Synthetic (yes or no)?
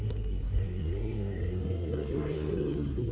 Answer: yes